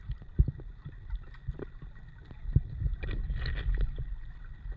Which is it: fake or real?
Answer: real